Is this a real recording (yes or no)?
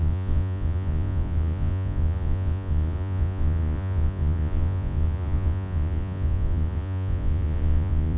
no